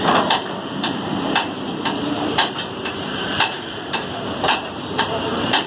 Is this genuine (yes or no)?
no